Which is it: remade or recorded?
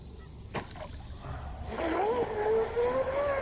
recorded